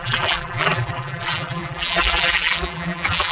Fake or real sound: fake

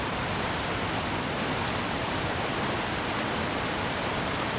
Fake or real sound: real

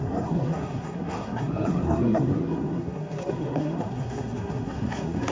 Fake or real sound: fake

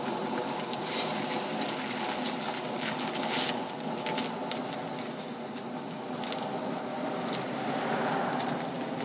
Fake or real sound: real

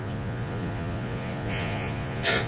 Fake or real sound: fake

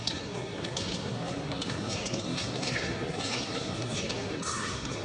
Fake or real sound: fake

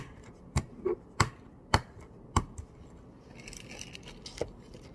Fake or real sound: real